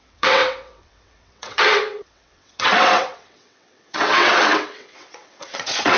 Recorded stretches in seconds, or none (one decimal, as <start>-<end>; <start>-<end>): none